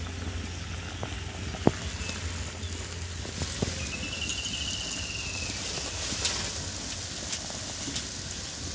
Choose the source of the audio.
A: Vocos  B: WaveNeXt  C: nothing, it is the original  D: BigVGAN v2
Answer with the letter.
C